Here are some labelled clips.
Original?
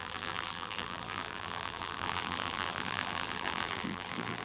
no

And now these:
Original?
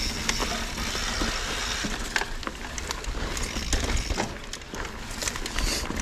yes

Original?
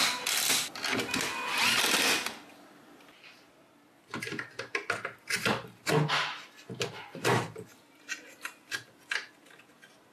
yes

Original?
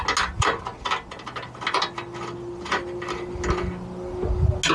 yes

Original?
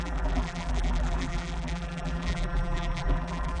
no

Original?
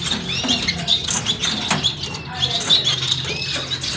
yes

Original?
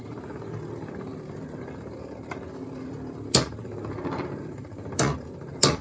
no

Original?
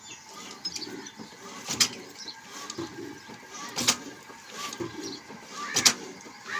yes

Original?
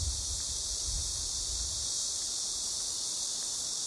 no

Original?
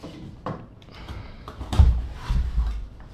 no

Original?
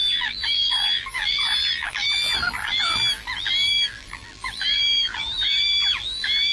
no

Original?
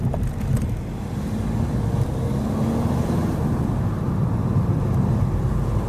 yes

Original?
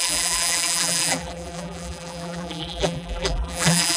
no